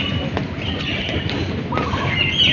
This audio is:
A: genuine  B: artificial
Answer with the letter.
A